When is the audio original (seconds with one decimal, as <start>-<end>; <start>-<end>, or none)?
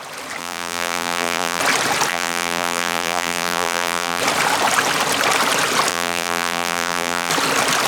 0.0-0.4; 1.6-2.1; 4.2-5.9; 7.3-7.9